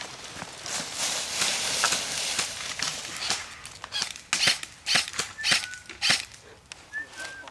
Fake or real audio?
real